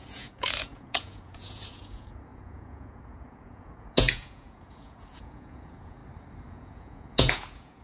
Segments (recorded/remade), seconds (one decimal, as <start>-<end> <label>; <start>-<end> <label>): 0.0-6.0 remade; 6.0-6.5 recorded; 6.5-7.8 remade

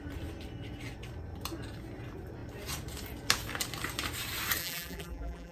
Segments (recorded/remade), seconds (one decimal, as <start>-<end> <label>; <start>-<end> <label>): 0.0-4.6 recorded; 4.6-5.5 remade

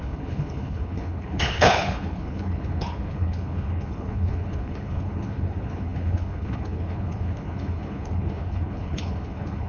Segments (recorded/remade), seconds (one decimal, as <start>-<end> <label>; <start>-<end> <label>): 0.0-9.7 remade

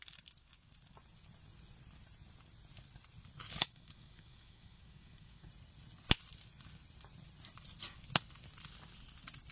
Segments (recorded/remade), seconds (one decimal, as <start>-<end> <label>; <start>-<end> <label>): 0.0-3.6 recorded; 3.6-5.5 remade; 5.5-9.5 recorded

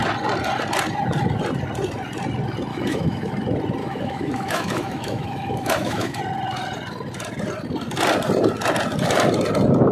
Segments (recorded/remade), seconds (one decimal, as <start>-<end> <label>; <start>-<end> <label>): 0.0-2.7 recorded; 2.7-3.3 remade; 3.3-3.8 recorded; 3.8-6.2 remade; 6.2-9.9 recorded

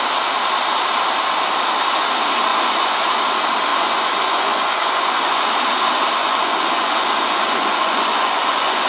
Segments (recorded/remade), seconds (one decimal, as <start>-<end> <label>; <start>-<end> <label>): 0.0-2.5 recorded; 2.5-3.2 remade; 3.2-3.7 recorded; 3.7-5.5 remade; 5.5-6.2 recorded; 6.2-8.9 remade

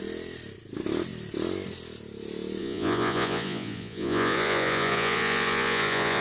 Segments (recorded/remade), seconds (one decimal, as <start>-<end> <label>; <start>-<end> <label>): 0.0-2.6 recorded; 2.6-6.2 remade